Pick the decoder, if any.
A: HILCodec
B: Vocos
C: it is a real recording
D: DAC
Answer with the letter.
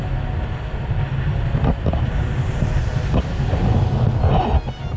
C